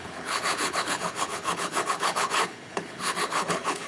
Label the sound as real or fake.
fake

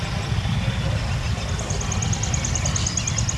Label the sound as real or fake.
real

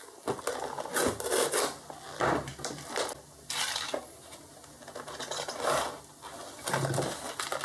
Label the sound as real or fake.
real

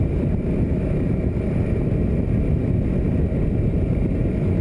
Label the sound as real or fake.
real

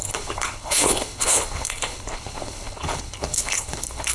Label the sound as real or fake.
fake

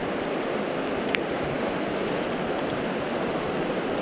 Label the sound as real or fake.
real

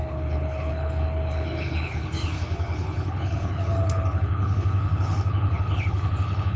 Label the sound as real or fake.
fake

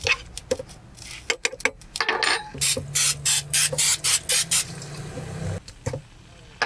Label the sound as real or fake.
real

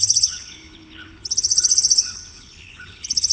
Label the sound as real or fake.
fake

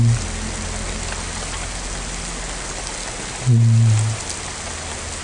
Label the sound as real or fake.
real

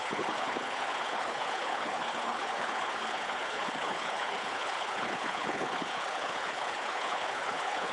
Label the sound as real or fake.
fake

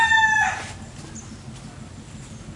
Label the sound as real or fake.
real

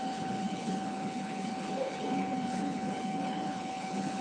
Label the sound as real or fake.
fake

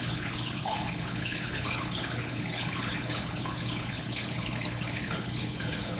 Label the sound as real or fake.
fake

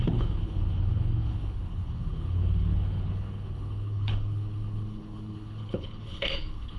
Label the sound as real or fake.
fake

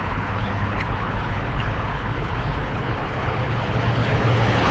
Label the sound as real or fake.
fake